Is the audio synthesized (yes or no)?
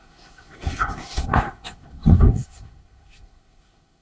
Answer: yes